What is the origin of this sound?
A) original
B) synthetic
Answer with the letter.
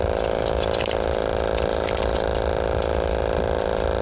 A